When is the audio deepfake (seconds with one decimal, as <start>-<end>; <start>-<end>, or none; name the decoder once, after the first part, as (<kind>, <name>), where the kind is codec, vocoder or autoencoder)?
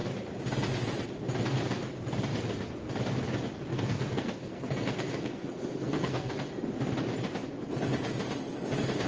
3.7-6.3 (codec, SNAC)